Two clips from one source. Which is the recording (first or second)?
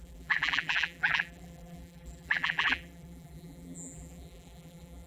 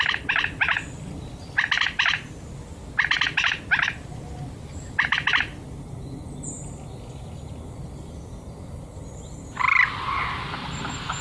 second